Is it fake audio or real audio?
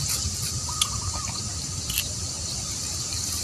real